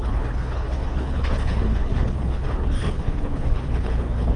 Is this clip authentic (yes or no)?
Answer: no